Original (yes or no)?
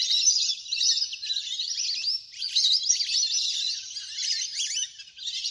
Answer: yes